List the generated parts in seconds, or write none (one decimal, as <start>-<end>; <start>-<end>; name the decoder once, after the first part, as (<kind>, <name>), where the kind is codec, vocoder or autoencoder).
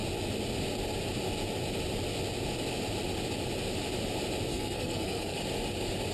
4.5-5.4 (codec, SNAC)